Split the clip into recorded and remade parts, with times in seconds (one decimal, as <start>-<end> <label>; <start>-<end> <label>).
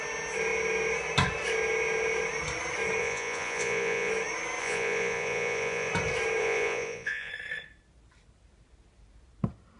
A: 0.0-3.0 recorded; 3.0-4.1 remade; 4.1-4.6 recorded; 4.6-5.9 remade; 5.9-6.4 recorded; 6.4-7.3 remade; 7.3-9.8 recorded